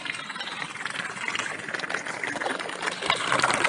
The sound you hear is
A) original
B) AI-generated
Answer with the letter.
A